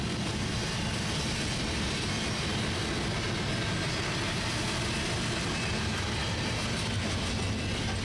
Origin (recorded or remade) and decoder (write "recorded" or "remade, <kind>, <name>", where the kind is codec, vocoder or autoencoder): recorded